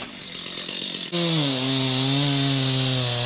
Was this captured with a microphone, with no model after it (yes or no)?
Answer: yes